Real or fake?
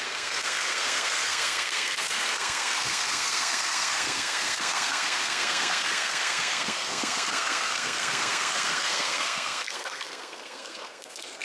fake